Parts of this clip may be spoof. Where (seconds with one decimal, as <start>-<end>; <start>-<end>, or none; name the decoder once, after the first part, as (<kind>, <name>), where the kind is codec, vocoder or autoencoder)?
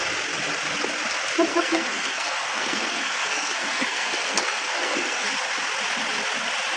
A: 1.5-5.3 (codec, SNAC)